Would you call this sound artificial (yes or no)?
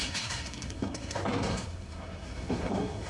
yes